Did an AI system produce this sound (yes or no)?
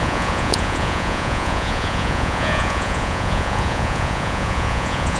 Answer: yes